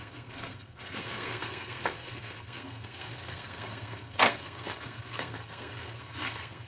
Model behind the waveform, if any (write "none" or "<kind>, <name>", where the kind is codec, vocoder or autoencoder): codec, SNAC